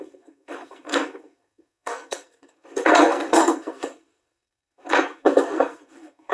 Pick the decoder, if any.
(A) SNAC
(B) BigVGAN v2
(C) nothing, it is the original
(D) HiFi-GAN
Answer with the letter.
A